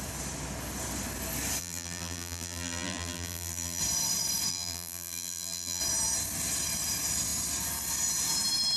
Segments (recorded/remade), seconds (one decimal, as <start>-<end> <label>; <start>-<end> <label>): 0.0-1.6 recorded; 1.6-3.8 remade; 3.8-4.5 recorded; 4.5-5.8 remade; 5.8-8.8 recorded